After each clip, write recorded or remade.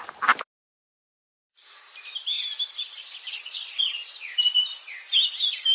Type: recorded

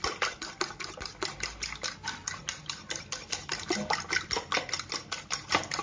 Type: recorded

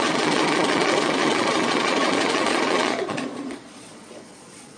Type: remade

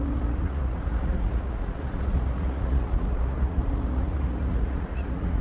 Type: remade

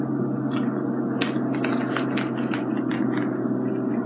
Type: recorded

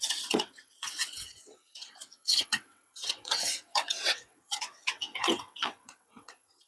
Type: remade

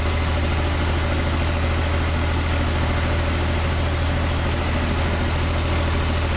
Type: recorded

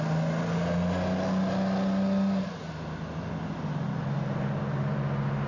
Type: recorded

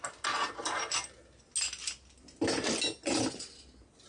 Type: recorded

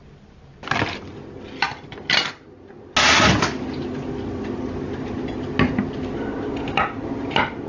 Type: recorded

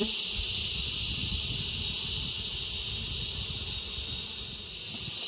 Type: recorded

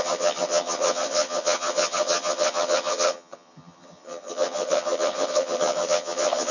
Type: remade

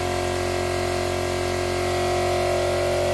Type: recorded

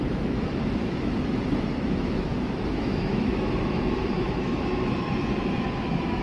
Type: remade